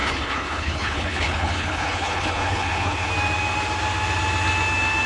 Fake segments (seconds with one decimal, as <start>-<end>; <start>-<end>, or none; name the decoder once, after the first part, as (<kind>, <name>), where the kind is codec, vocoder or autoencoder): 0.0-3.1 (codec, HILCodec)